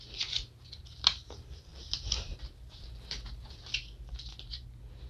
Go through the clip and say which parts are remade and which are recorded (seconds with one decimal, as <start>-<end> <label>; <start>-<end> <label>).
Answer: 0.0-5.1 recorded

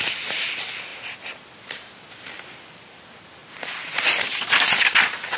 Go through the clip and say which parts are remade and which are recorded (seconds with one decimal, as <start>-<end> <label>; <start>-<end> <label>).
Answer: 0.0-5.4 recorded

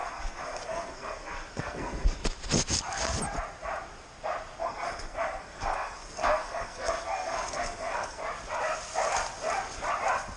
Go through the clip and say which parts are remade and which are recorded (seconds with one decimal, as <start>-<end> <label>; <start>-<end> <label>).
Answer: 0.0-2.2 remade; 2.2-4.6 recorded; 4.6-8.2 remade; 8.2-10.4 recorded

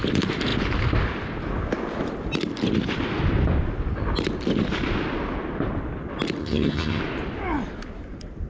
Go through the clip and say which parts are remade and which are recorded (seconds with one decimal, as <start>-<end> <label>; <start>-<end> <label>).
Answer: 0.0-6.4 recorded; 6.4-7.0 remade; 7.0-8.5 recorded

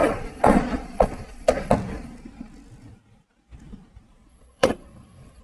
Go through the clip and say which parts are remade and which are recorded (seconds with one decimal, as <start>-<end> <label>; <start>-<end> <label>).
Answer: 0.0-1.7 remade; 1.7-4.3 recorded; 4.3-5.4 remade

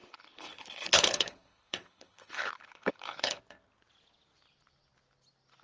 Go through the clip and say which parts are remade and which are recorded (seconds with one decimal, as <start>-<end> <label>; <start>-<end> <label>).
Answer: 0.0-3.4 remade; 3.4-5.6 recorded

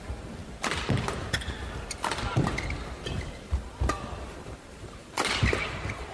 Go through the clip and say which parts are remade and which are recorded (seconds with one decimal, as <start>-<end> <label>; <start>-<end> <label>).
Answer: 0.0-0.4 remade; 0.4-4.1 recorded; 4.1-6.1 remade